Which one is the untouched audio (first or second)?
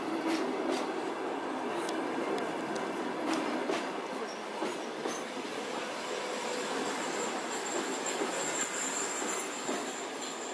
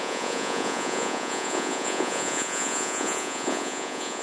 first